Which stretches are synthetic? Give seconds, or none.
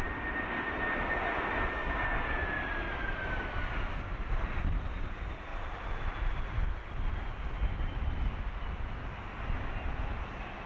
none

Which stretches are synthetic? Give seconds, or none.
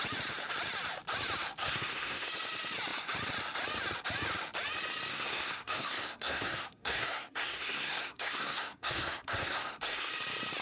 1.6-2.3 (codec, SNAC); 5.1-10.1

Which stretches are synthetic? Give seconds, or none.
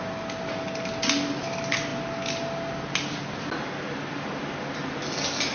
none